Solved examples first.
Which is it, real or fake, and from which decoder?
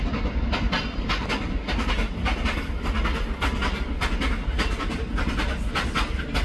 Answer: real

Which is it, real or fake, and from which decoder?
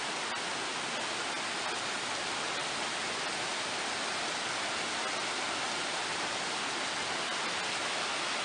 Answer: real